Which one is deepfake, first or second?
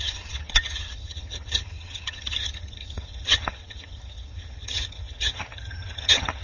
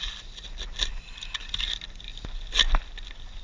first